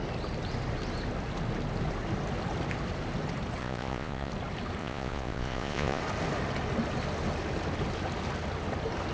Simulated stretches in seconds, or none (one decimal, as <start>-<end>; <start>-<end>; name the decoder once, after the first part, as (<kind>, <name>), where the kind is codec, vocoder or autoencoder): 3.6-4.3 (vocoder, Vocos); 4.8-6.0